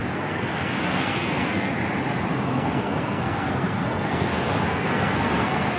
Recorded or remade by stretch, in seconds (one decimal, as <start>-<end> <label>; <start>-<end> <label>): 0.0-1.7 remade; 1.7-2.3 recorded; 2.3-5.8 remade